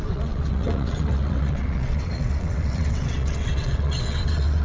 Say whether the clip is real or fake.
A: fake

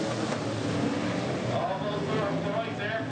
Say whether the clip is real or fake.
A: real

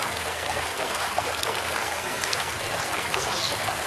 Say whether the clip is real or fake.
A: fake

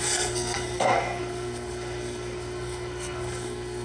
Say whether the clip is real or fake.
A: fake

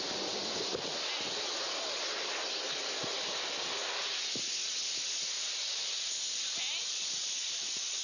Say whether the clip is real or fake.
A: real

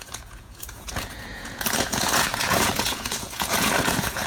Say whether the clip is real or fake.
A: fake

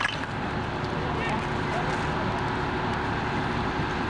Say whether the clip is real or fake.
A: real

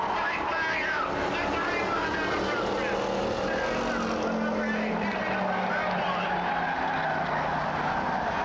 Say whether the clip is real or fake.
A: real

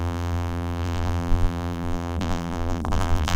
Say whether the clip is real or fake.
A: fake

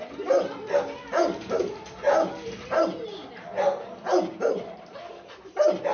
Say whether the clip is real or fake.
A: real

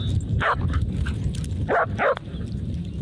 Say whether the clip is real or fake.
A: real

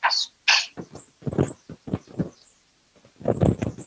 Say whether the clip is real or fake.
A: real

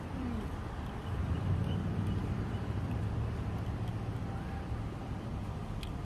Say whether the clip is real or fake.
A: fake